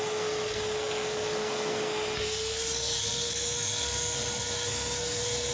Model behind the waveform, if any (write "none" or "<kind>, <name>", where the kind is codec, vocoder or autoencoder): codec, SNAC